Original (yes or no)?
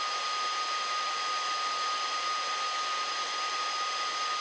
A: yes